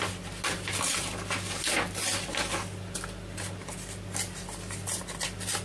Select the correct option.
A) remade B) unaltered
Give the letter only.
B